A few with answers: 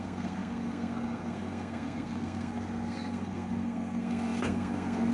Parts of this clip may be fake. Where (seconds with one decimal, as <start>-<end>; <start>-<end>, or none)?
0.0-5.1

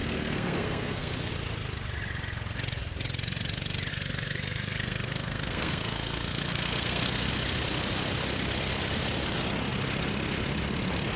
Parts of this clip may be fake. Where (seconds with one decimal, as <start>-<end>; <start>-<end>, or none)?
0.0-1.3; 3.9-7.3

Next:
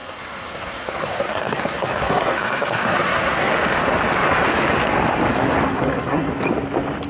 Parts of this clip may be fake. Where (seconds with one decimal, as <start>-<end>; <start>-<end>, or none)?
0.0-3.5; 5.7-6.3